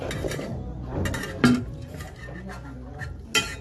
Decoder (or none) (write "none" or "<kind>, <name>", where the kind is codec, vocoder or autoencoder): none